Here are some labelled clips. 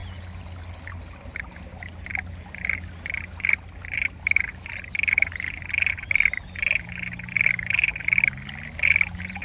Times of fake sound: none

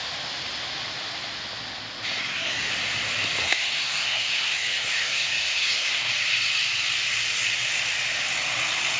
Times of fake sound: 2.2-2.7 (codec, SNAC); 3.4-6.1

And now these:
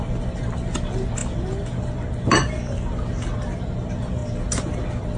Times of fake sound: none

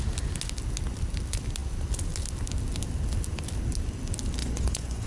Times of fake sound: 4.4-5.1 (vocoder, Vocos)